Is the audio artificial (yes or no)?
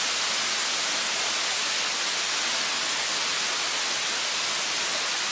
no